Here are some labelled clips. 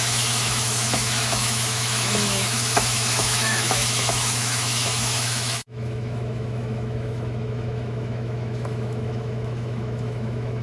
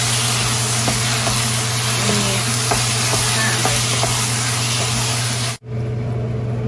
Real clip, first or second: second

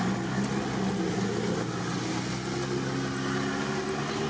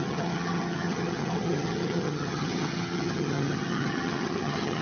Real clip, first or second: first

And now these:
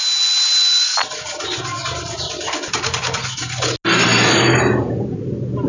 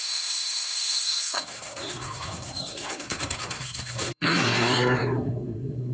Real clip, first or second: first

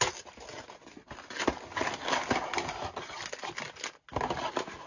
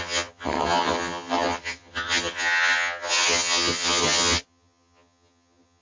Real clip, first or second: first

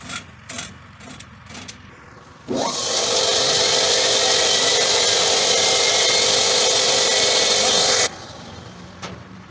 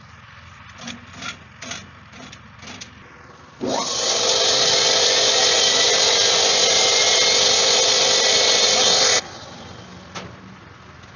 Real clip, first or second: second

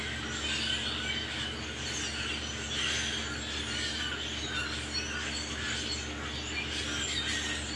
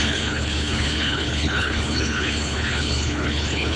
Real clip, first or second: first